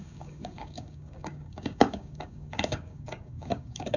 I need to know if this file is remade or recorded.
remade